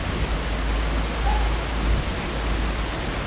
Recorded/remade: recorded